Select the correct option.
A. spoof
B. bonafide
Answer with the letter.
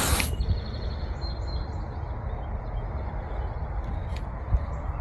B